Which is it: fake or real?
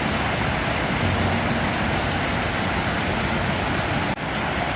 real